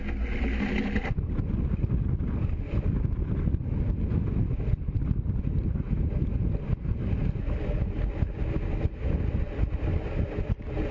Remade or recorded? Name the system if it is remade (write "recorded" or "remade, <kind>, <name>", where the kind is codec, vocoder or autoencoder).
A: recorded